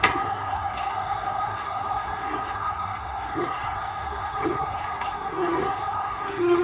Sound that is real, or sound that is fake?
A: fake